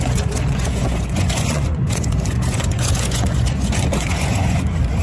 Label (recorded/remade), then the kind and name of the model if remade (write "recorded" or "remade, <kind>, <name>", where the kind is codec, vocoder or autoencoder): remade, vocoder, Vocos